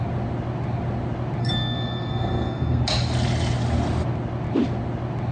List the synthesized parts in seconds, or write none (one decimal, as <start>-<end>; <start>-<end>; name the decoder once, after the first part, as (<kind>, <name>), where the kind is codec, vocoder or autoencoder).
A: 1.4-2.8 (codec, SNAC)